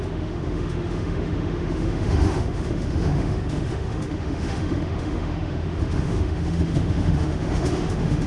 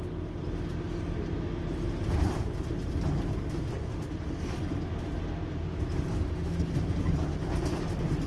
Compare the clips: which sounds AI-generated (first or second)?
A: first